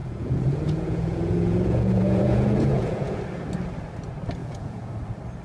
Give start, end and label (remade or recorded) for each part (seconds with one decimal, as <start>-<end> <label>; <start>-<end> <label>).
0.0-3.2 remade; 3.2-4.4 recorded; 4.4-4.9 remade; 4.9-5.4 recorded

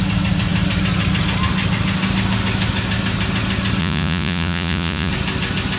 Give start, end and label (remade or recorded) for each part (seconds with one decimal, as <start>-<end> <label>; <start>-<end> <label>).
0.0-3.8 recorded; 3.8-5.1 remade; 5.1-5.8 recorded

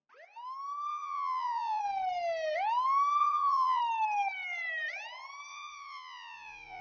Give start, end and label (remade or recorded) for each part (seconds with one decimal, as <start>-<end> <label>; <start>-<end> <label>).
0.0-0.9 recorded; 0.9-1.8 remade; 1.8-3.2 recorded; 3.2-3.8 remade; 3.8-5.5 recorded; 5.5-6.8 remade